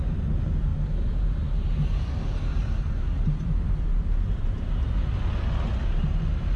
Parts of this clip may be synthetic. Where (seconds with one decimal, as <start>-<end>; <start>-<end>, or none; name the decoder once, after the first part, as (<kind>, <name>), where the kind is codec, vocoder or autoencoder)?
2.5-5.0 (vocoder, BigVGAN v2)